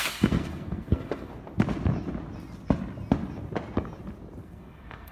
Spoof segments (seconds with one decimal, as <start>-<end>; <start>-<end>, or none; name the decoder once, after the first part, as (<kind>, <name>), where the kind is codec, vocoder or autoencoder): 0.0-1.3 (codec, SNAC); 4.4-5.1